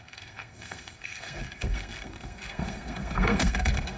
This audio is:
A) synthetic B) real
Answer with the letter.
A